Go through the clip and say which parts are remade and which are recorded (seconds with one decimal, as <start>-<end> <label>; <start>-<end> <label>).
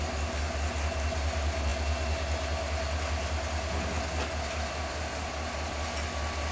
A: 0.0-6.5 recorded